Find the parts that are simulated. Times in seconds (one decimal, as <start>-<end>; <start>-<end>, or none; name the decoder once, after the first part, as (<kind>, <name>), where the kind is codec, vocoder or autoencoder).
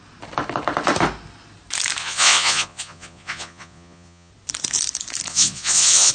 2.0-4.3 (vocoder, Vocos); 5.3-6.1